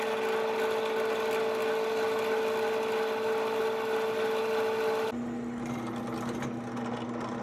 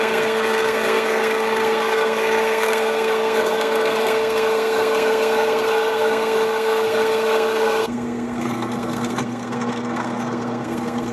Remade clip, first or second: second